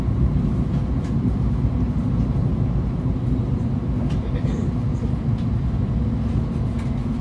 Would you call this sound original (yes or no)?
yes